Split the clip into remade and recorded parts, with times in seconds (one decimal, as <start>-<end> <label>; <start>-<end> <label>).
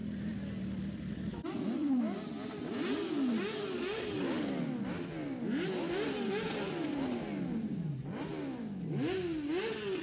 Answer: 0.0-10.0 recorded